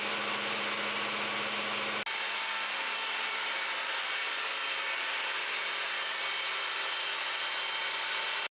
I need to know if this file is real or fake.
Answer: real